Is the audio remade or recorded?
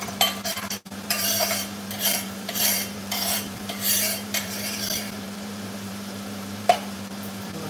remade